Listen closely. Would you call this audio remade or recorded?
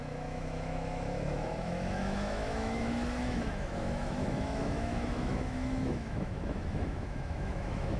remade